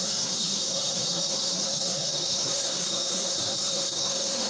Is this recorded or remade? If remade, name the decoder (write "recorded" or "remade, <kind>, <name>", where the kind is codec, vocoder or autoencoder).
remade, codec, SNAC